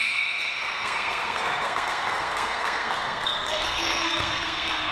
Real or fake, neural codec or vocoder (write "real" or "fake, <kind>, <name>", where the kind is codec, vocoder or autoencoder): fake, codec, SNAC